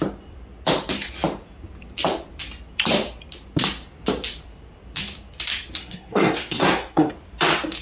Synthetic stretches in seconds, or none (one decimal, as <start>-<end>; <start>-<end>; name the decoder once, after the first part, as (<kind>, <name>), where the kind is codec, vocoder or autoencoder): 5.8-7.1 (codec, SNAC)